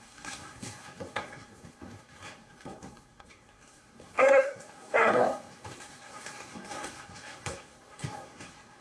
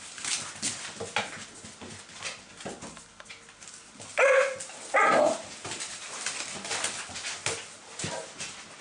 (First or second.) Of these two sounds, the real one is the second